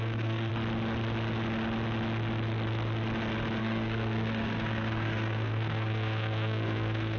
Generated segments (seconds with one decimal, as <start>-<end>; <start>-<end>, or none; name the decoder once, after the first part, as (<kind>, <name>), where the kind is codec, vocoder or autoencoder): 0.0-0.5 (codec, SNAC); 3.6-7.2